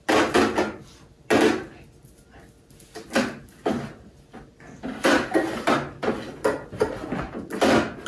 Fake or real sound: real